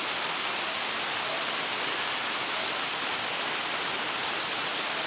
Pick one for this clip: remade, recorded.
recorded